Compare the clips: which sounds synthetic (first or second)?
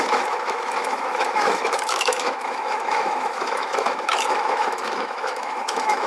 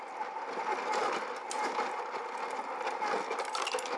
first